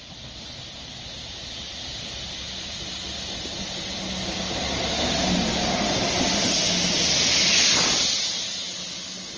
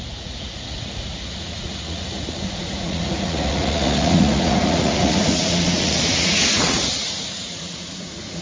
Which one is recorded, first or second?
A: first